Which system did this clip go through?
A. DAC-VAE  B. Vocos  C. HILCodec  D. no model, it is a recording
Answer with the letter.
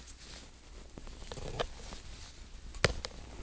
D